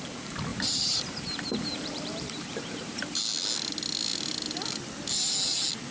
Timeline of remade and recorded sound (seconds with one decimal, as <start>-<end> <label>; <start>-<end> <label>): 0.0-0.5 recorded; 0.5-3.2 remade; 3.2-5.9 recorded